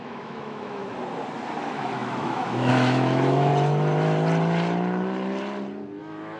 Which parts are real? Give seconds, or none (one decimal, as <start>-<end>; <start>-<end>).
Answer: 0.8-1.6; 3.5-6.0